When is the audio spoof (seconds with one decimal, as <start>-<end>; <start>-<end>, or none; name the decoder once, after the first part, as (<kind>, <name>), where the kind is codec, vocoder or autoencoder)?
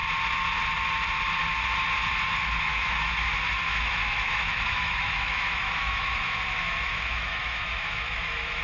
2.7-3.3 (autoencoder, DAC-VAE); 3.7-8.6